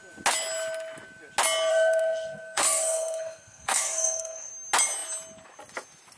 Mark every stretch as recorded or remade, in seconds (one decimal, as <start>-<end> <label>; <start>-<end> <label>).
0.0-1.7 recorded; 1.7-4.5 remade; 4.5-6.2 recorded